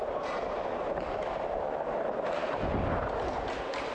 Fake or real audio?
real